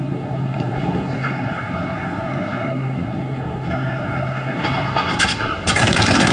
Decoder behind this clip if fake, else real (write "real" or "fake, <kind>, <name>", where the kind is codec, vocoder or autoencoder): fake, codec, SNAC